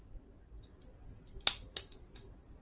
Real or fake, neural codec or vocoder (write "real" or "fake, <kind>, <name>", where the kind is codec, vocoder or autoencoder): fake, vocoder, BigVGAN v2